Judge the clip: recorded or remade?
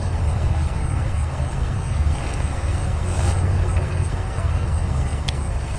remade